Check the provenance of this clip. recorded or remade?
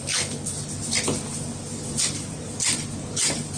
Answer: remade